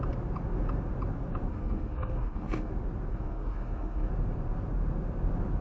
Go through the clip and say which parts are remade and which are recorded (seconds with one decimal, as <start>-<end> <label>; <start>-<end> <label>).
0.0-1.5 recorded; 1.5-2.7 remade; 2.7-3.1 recorded; 3.1-4.1 remade; 4.1-5.6 recorded